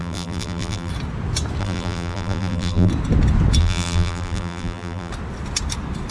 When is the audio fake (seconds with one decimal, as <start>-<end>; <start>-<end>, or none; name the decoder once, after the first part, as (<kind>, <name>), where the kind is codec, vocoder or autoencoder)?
0.0-0.9 (vocoder, BigVGAN v2); 1.6-2.9; 3.6-5.1